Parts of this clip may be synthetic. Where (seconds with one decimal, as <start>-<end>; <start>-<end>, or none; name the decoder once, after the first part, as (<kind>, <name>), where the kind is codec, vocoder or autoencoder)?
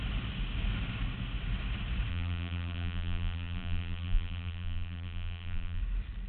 2.1-5.8 (vocoder, BigVGAN v2)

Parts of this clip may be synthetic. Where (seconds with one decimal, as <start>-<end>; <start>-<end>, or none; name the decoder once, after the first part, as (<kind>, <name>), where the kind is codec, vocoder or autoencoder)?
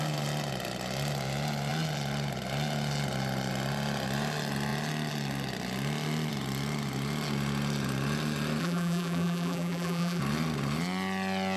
8.6-10.2 (vocoder, BigVGAN v2)